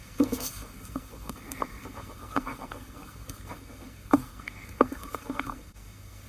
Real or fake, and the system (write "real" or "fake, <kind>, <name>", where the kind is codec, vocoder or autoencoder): fake, codec, SNAC